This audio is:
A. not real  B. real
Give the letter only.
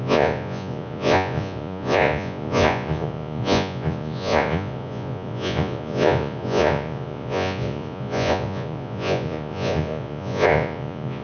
A